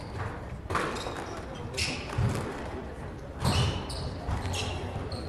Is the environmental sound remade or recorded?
remade